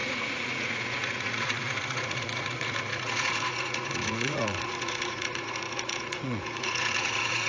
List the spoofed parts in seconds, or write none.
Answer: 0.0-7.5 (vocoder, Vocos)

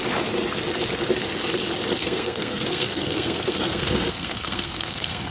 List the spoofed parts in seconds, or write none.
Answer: 2.0-5.3 (codec, SNAC)

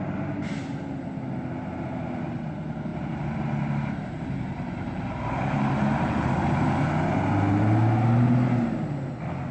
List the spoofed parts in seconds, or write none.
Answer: 2.9-6.3 (vocoder, BigVGAN v2)

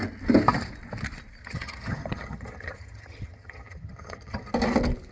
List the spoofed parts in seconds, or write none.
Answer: 1.4-4.5 (vocoder, HiFi-GAN)